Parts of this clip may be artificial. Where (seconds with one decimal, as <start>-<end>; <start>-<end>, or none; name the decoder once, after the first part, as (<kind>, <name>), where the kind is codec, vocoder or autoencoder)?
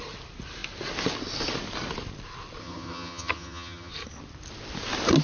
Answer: 2.6-3.9 (vocoder, HiFi-GAN)